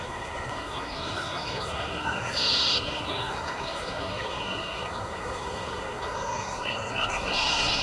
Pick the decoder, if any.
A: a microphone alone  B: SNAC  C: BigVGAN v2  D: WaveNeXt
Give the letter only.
B